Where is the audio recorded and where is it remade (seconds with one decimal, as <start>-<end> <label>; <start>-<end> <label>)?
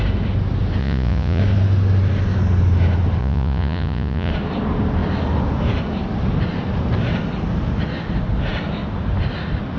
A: 0.0-0.8 recorded; 0.8-1.4 remade; 1.4-3.2 recorded; 3.2-4.3 remade; 4.3-9.8 recorded